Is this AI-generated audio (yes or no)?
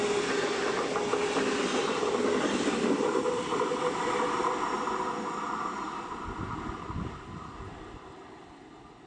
no